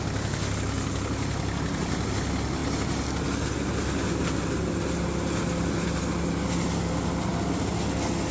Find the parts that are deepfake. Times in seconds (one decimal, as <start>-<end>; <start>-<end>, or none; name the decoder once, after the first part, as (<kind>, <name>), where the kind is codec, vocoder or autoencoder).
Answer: none